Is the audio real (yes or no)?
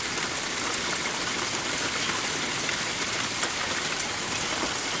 yes